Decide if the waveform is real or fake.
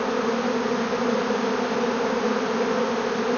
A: real